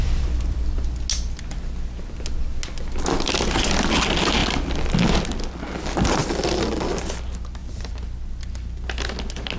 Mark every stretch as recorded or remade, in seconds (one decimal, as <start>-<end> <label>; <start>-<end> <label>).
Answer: 0.0-1.0 remade; 1.0-4.4 recorded; 4.4-5.1 remade; 5.1-7.6 recorded; 7.6-8.3 remade; 8.3-9.6 recorded